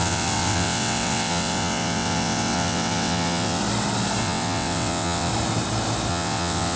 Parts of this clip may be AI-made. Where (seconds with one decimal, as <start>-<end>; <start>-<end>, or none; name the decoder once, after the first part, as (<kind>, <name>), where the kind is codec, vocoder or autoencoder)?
0.0-3.6 (vocoder, WaveNeXt); 4.2-5.3; 6.1-6.8